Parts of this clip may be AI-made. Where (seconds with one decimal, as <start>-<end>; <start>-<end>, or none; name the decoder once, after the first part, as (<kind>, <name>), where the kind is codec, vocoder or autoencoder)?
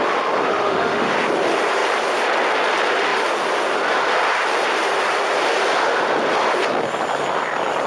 0.5-1.1 (autoencoder, DAC-VAE)